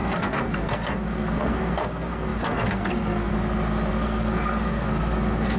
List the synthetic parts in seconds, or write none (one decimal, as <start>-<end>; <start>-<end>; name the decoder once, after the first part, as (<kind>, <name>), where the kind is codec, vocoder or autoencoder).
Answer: 0.0-3.3 (codec, SNAC); 3.9-5.6